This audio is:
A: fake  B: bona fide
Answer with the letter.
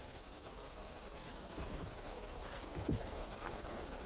A